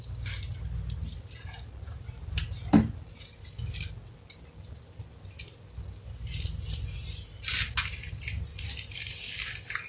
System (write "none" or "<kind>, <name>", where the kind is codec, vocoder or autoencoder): none